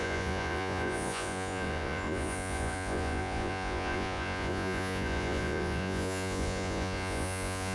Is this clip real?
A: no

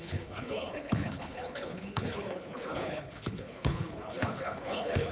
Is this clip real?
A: no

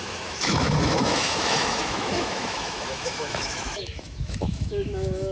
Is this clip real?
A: no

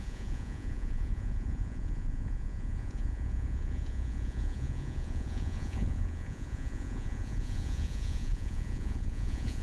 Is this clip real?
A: no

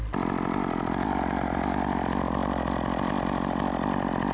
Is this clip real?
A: yes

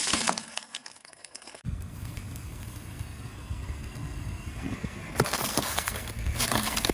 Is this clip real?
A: no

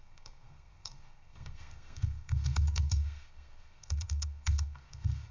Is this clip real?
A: no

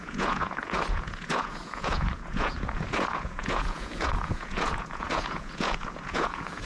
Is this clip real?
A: no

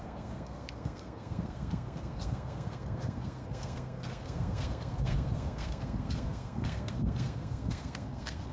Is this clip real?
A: no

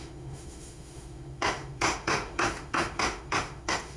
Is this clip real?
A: no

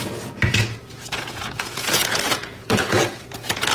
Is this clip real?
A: no